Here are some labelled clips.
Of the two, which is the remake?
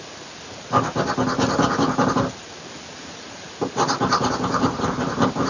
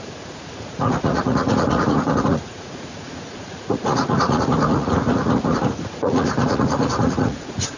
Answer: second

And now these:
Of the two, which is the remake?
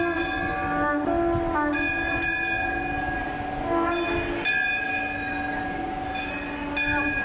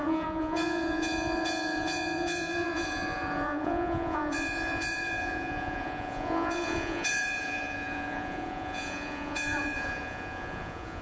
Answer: second